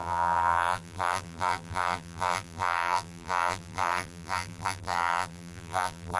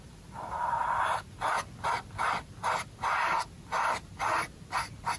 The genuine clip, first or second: second